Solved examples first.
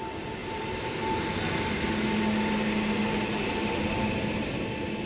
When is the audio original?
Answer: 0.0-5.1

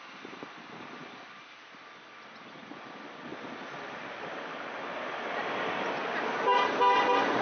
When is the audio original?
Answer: 0.0-7.4

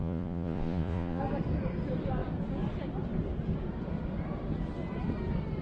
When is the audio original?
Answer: 1.2-5.6

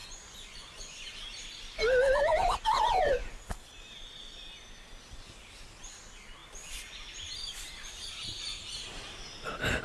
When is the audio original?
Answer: 1.1-9.8